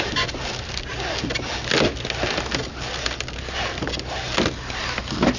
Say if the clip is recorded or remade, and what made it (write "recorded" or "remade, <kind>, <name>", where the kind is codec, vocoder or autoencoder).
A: recorded